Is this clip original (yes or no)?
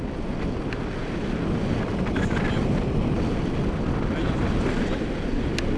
yes